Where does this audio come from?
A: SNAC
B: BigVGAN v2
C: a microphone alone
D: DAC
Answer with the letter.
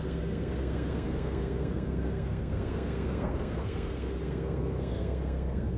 A